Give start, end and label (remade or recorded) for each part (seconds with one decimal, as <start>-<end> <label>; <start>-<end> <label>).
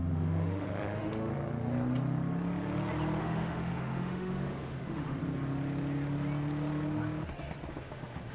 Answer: 0.0-1.3 remade; 1.3-3.2 recorded; 3.2-5.2 remade; 5.2-7.8 recorded; 7.8-8.3 remade